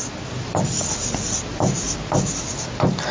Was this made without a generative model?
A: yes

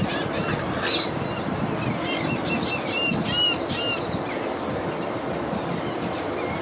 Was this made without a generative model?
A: yes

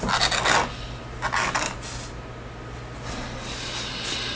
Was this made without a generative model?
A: yes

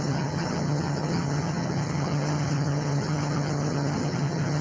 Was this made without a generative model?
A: no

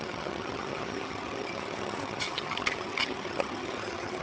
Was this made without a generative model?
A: no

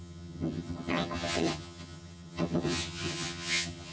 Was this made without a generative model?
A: no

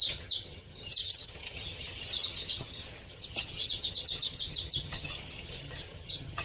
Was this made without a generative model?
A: no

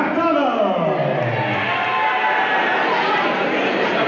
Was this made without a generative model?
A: yes